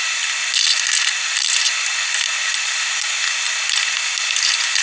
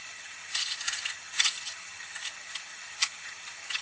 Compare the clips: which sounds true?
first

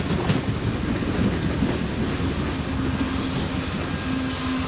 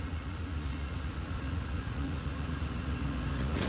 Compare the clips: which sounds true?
first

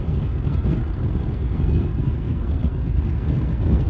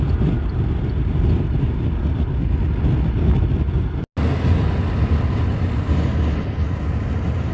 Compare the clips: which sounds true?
second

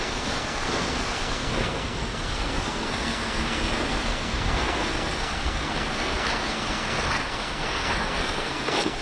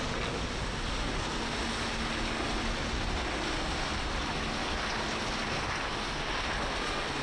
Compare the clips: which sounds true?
second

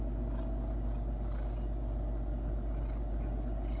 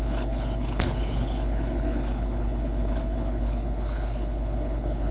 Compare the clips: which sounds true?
first